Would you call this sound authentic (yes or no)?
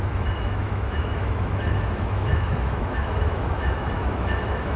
no